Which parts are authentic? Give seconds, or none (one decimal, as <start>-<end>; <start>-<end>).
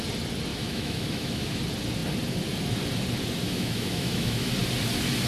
0.0-0.5; 1.6-3.4; 4.5-5.3